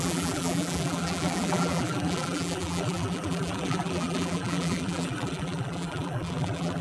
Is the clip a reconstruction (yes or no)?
yes